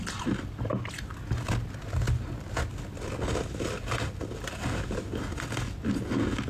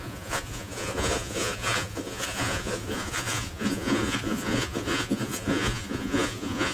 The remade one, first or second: second